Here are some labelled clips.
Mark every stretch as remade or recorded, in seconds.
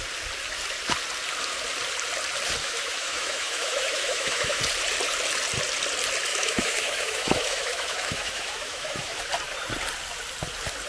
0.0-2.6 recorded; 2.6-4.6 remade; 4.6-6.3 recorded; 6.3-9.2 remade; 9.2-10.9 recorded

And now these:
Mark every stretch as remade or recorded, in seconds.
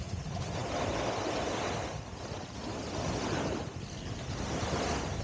0.0-5.2 recorded